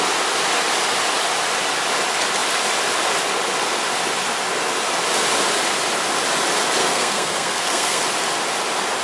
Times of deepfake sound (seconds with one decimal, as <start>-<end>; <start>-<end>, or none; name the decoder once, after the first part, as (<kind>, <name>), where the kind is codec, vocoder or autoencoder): 6.8-8.0 (codec, SNAC)